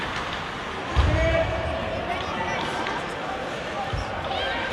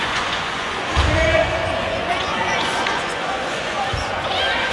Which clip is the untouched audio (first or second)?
first